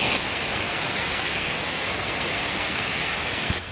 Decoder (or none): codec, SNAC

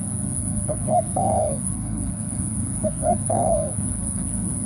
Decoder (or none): codec, SNAC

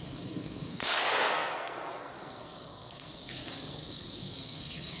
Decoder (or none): codec, SNAC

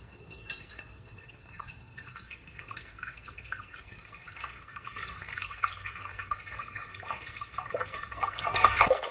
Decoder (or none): codec, SNAC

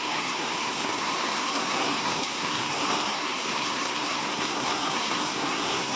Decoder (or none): codec, SNAC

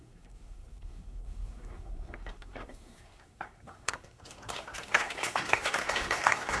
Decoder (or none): codec, SNAC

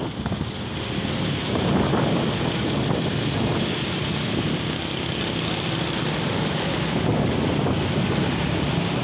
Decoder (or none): none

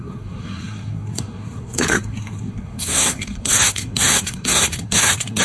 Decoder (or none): codec, SNAC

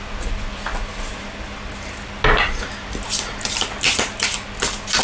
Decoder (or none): none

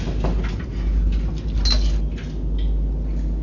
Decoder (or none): none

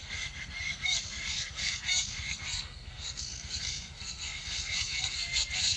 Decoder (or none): codec, SNAC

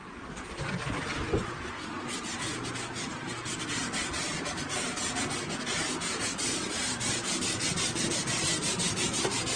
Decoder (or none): none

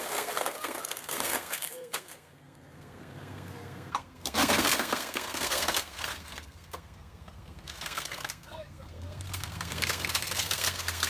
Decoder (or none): codec, SNAC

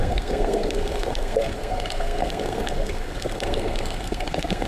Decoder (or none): codec, SNAC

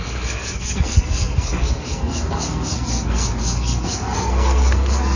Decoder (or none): codec, SNAC